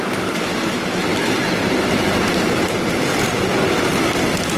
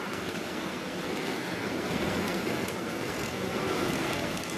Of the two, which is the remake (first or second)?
second